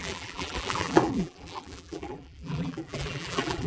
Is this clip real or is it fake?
fake